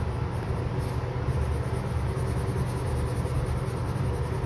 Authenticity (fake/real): real